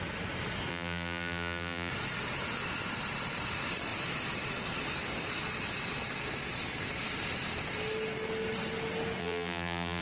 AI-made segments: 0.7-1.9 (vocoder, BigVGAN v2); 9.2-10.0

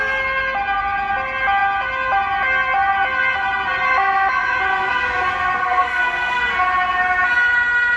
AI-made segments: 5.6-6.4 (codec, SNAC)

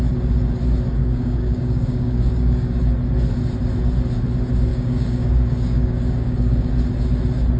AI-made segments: 1.0-2.8 (codec, DAC); 4.7-6.7

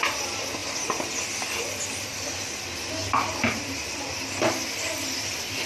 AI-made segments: none